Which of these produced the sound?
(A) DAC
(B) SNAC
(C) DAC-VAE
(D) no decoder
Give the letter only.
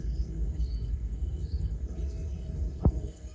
B